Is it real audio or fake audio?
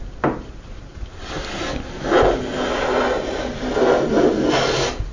real